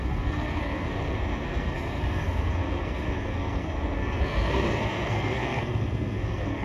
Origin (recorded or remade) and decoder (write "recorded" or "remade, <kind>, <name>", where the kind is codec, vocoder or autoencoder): remade, codec, SNAC